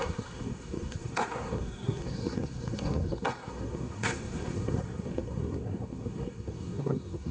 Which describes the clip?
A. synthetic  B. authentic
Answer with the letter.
A